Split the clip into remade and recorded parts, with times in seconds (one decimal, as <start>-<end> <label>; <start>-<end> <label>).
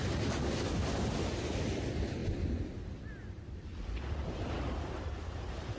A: 0.0-5.8 recorded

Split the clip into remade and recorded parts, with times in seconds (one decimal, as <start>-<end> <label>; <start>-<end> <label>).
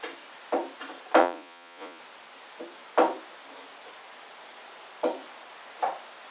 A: 0.0-1.2 recorded; 1.2-2.0 remade; 2.0-6.3 recorded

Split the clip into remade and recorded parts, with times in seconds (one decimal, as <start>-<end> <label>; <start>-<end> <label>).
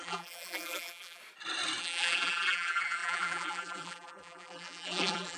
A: 0.0-1.2 remade; 1.2-1.8 recorded; 1.8-5.4 remade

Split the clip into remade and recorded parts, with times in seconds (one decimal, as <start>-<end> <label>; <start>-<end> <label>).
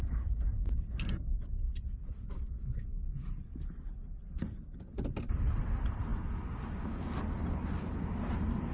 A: 0.0-2.3 recorded; 2.3-3.0 remade; 3.0-8.7 recorded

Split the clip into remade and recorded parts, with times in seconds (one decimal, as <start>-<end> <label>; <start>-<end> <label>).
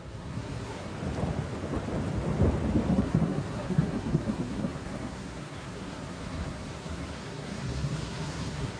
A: 0.0-0.9 remade; 0.9-2.9 recorded; 2.9-8.8 remade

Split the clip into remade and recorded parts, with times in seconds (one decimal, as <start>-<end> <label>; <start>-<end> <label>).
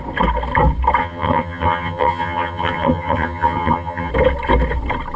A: 0.0-1.0 recorded; 1.0-4.1 remade; 4.1-5.2 recorded